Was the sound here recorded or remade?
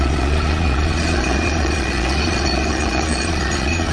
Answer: remade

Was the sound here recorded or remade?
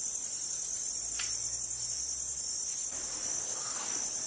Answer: recorded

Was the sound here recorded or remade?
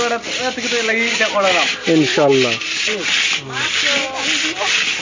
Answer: recorded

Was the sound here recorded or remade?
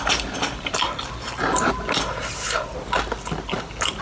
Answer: recorded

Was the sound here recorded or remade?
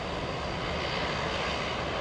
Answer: recorded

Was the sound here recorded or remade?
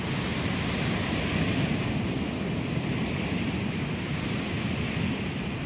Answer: recorded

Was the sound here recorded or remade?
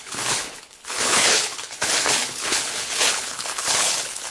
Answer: remade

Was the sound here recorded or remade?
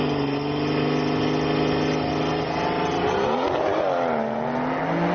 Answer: recorded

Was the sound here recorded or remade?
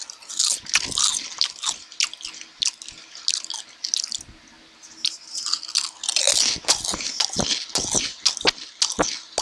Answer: recorded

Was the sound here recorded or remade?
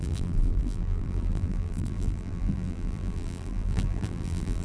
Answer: remade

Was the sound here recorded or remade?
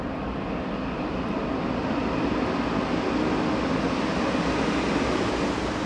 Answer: recorded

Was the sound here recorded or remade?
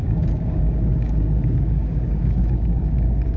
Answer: remade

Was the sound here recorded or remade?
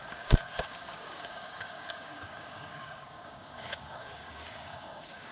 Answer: remade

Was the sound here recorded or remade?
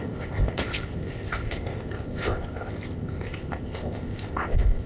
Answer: remade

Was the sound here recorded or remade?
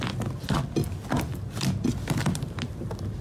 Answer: recorded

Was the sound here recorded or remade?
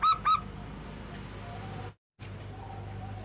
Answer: recorded